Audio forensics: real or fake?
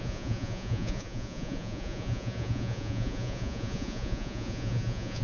fake